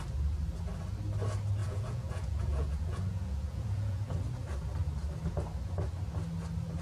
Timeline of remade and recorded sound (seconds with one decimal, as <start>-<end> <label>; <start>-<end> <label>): 0.0-1.6 recorded; 1.6-4.1 remade; 4.1-6.8 recorded